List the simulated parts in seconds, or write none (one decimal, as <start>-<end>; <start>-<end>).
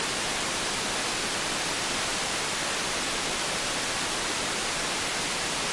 none